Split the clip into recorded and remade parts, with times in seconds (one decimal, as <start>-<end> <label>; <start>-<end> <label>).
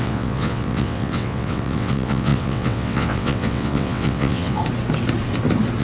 0.0-4.6 remade; 4.6-5.8 recorded